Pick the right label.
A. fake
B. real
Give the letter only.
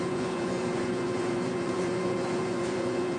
A